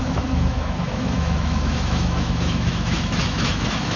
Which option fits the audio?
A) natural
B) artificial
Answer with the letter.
B